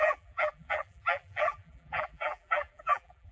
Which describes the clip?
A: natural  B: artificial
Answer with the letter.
B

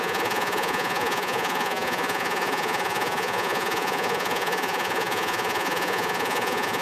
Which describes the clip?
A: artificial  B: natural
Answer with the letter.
A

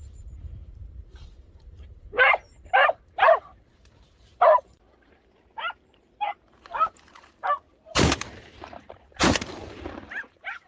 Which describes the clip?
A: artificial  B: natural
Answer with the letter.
A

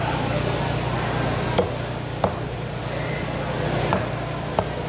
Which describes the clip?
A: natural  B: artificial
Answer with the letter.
A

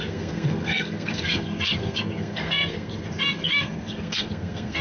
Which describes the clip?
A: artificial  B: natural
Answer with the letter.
A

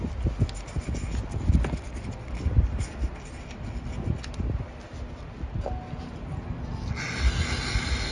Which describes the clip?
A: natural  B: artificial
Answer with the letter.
A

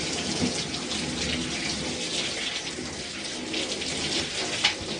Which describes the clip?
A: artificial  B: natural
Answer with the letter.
B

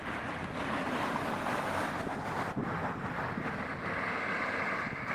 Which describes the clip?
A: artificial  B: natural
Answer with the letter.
B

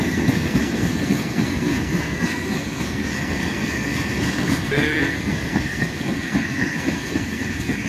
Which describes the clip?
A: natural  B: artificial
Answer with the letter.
B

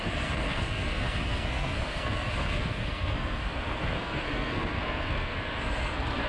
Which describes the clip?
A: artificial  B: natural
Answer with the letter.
A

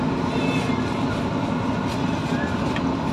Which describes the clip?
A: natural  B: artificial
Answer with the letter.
A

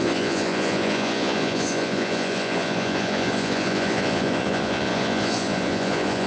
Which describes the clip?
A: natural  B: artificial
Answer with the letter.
B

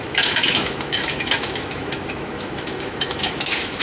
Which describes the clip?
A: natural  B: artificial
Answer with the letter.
B